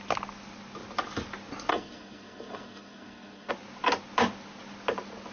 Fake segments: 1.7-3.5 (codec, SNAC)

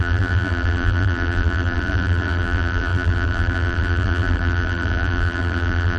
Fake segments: 0.0-6.0 (vocoder, BigVGAN v2)

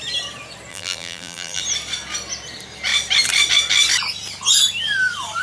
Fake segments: 0.7-1.6 (vocoder, BigVGAN v2)

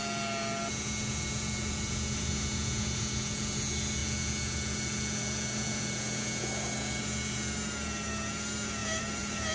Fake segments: 8.8-9.5 (vocoder, BigVGAN v2)

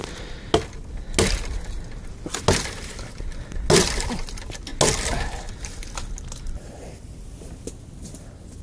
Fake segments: none

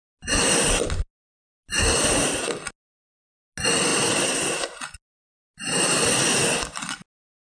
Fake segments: none

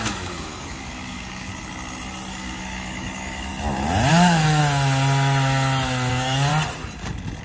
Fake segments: 0.0-1.5 (codec, DAC); 2.3-3.5; 4.1-4.6; 6.1-6.5